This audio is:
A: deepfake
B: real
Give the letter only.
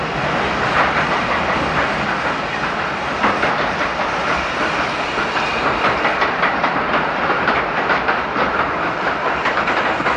A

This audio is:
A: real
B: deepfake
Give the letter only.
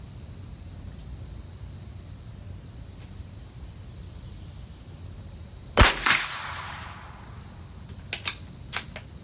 A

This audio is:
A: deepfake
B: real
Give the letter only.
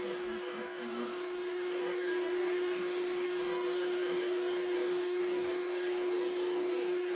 A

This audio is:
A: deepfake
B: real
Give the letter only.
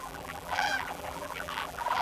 A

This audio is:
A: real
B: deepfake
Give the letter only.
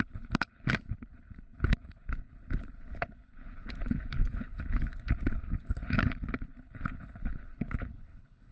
B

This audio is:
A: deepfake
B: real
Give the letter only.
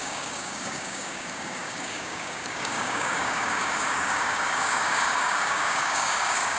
A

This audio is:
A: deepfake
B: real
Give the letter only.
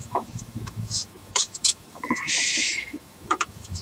A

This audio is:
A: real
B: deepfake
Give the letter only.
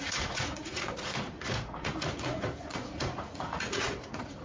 B